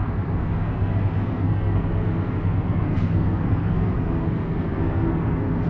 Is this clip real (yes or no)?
no